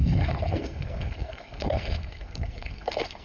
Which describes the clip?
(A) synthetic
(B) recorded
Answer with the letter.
A